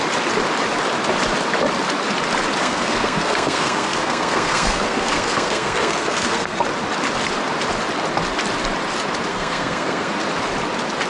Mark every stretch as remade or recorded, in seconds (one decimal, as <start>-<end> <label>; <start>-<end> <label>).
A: 0.0-2.6 recorded; 2.6-6.6 remade; 6.6-9.3 recorded; 9.3-10.2 remade; 10.2-11.1 recorded